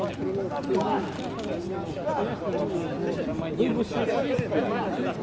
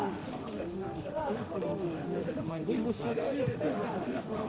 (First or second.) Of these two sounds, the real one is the first